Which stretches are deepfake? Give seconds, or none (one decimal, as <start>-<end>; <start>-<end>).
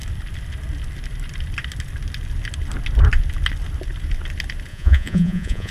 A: 4.7-5.7